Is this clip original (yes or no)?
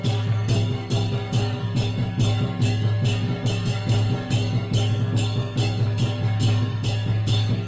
no